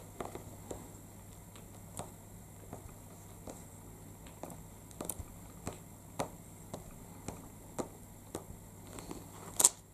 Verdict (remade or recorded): recorded